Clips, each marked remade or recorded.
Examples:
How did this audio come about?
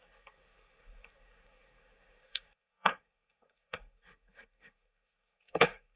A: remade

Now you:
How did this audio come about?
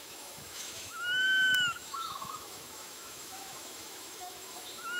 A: remade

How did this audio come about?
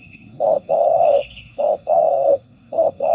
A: remade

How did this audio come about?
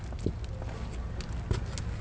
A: recorded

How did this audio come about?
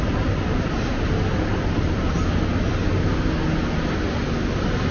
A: recorded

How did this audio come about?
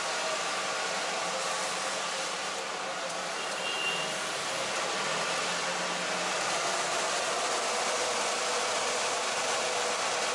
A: recorded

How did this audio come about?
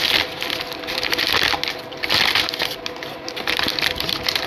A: recorded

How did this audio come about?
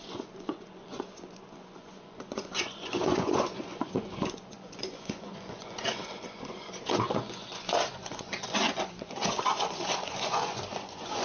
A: remade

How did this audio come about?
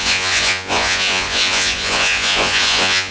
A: remade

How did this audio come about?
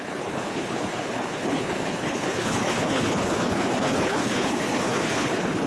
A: remade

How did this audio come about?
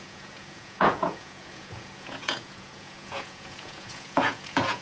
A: remade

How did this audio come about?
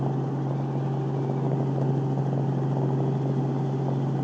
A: recorded